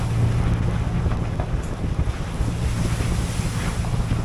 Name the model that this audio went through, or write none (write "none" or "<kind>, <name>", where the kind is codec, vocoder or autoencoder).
none